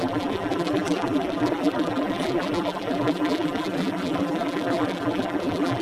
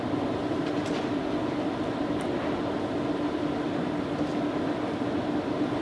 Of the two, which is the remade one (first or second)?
first